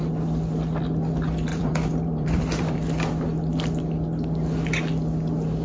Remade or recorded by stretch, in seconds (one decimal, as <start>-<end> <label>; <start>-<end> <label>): 0.0-1.5 recorded; 1.5-3.1 remade; 3.1-5.6 recorded